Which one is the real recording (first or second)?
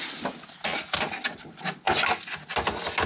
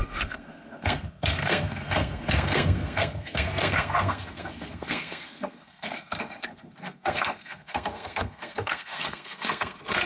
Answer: first